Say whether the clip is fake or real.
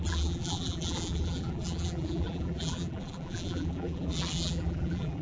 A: fake